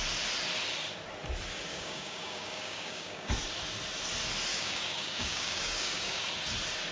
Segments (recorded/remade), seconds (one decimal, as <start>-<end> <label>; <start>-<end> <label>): 0.0-1.7 recorded; 1.7-3.3 remade; 3.3-4.5 recorded; 4.5-6.3 remade; 6.3-6.9 recorded